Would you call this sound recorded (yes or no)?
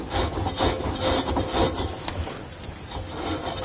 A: yes